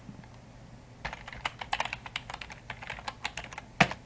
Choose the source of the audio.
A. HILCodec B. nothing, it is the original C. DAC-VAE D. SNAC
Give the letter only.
B